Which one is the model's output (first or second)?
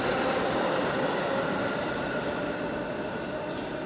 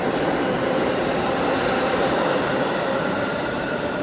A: second